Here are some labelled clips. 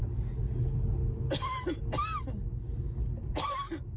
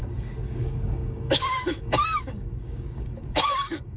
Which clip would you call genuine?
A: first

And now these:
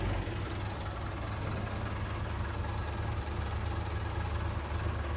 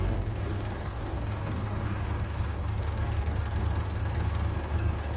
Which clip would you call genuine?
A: first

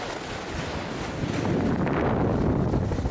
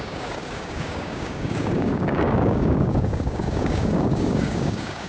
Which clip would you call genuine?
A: first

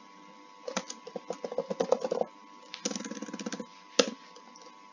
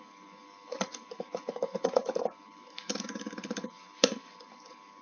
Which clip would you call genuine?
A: first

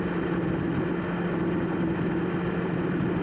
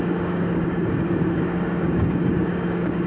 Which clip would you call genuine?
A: first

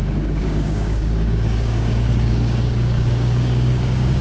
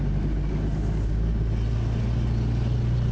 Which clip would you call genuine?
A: second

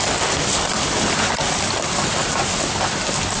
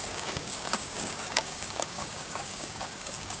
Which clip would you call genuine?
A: first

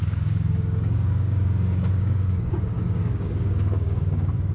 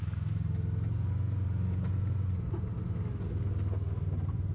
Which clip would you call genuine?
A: second